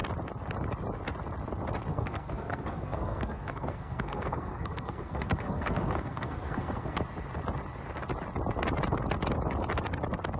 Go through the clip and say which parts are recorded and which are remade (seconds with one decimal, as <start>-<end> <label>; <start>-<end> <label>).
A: 0.0-1.9 recorded; 1.9-7.0 remade; 7.0-10.4 recorded